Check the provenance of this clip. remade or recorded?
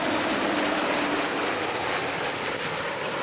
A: recorded